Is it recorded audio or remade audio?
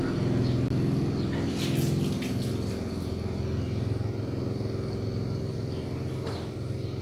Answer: recorded